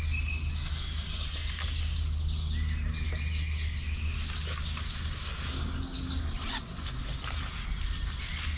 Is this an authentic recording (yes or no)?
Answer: yes